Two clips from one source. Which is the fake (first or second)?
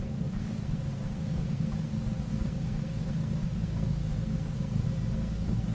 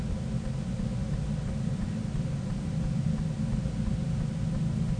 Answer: first